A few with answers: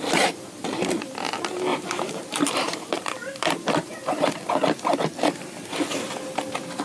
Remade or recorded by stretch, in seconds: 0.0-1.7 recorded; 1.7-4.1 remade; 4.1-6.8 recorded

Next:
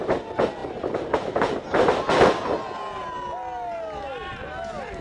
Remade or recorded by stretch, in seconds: 0.0-5.0 recorded

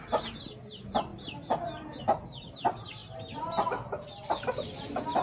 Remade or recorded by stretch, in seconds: 0.0-5.2 recorded

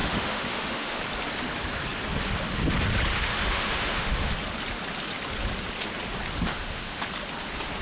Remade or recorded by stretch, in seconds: 0.0-1.0 remade; 1.0-3.1 recorded; 3.1-4.3 remade; 4.3-6.5 recorded; 6.5-7.0 remade; 7.0-7.8 recorded